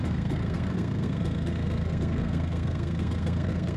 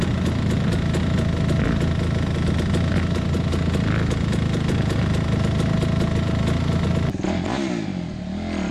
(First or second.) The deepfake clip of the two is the first